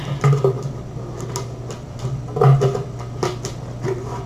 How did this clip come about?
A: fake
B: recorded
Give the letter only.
B